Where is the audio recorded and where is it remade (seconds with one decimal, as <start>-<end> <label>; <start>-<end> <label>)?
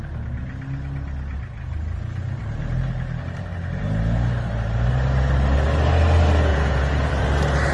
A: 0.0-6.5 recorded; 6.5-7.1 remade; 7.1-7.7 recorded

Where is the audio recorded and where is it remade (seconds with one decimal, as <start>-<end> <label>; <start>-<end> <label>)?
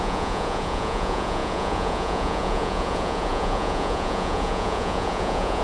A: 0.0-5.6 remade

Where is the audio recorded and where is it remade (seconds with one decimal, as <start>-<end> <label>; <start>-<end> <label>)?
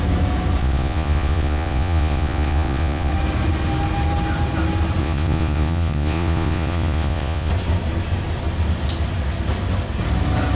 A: 0.0-0.6 recorded; 0.6-3.1 remade; 3.1-5.0 recorded; 5.0-7.5 remade; 7.5-10.5 recorded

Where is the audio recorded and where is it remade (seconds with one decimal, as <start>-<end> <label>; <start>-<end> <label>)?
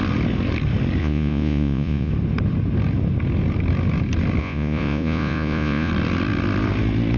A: 0.0-1.0 recorded; 1.0-2.1 remade; 2.1-4.4 recorded; 4.4-5.9 remade; 5.9-7.2 recorded